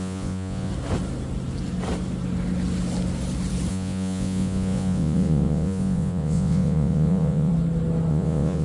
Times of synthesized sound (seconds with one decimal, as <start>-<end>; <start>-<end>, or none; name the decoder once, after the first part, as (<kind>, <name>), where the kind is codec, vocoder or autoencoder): 0.0-0.7 (vocoder, Vocos); 3.7-7.5; 8.1-8.6